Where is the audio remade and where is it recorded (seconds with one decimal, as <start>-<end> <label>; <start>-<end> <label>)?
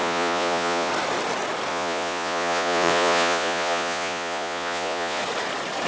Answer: 0.0-0.9 remade; 0.9-1.7 recorded; 1.7-5.2 remade; 5.2-5.9 recorded